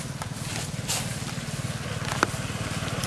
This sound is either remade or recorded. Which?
recorded